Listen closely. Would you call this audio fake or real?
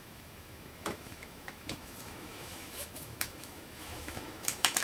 fake